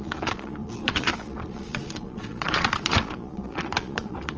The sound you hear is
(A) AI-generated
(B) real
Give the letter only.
A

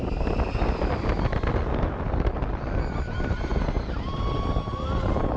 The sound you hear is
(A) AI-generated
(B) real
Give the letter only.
B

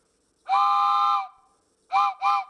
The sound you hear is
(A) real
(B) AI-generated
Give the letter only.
A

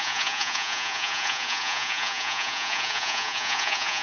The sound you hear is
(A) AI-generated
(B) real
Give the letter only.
A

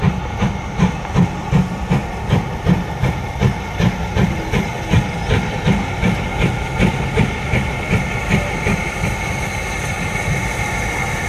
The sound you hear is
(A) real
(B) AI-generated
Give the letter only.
A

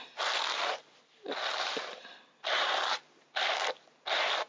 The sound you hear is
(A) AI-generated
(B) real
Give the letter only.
A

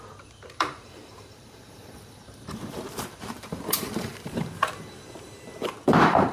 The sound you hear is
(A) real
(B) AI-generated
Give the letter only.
B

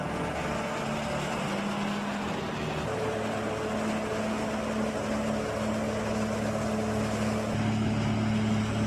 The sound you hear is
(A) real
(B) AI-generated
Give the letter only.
A